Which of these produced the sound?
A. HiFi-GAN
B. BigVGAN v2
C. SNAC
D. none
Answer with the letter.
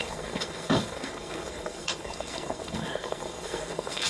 C